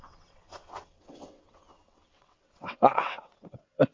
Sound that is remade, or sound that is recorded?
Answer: remade